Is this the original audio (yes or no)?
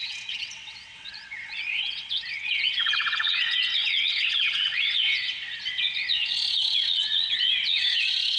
no